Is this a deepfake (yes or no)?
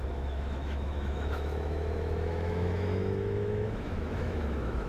yes